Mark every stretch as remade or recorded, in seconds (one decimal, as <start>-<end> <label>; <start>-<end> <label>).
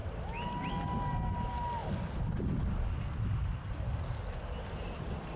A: 0.0-5.4 recorded